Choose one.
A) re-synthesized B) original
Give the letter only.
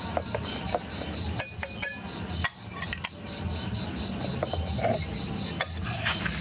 B